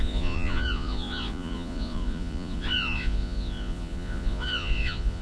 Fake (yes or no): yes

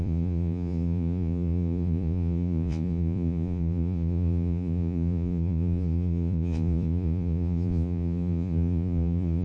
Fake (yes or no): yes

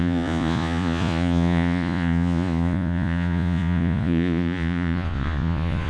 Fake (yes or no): yes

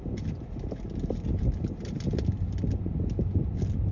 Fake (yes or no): no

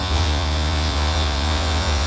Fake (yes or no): yes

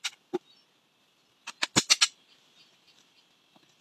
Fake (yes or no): no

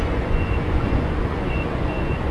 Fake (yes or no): yes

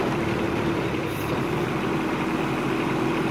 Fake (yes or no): no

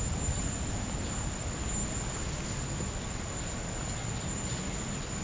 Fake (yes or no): no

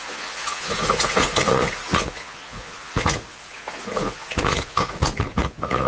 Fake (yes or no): yes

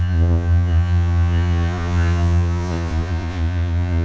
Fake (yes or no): yes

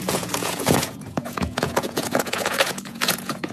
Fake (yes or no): yes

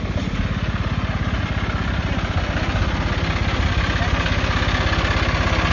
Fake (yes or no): no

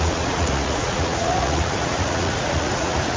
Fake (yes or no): yes